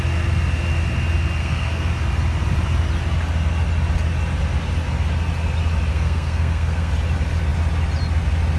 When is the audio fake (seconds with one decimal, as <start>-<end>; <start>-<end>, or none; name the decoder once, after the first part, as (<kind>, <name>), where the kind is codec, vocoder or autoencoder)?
1.4-1.9 (codec, SNAC); 5.9-6.9